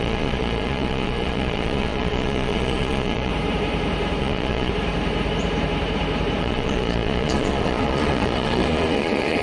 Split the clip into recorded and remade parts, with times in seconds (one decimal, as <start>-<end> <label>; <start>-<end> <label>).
0.0-3.3 remade; 3.3-4.2 recorded; 4.2-4.7 remade; 4.7-6.4 recorded; 6.4-9.4 remade